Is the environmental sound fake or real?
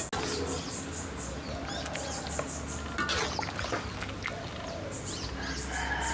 real